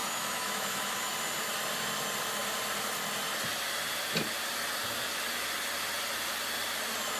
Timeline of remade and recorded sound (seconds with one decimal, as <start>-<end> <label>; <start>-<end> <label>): 0.0-1.1 remade; 1.1-7.2 recorded